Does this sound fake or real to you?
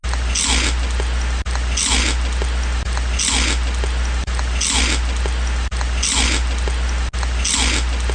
real